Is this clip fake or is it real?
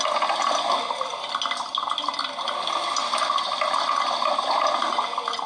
real